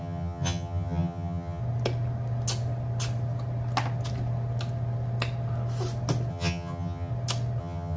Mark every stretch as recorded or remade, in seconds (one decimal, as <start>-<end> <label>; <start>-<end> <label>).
0.0-1.6 remade; 1.6-6.3 recorded; 6.3-7.1 remade; 7.1-7.6 recorded; 7.6-8.0 remade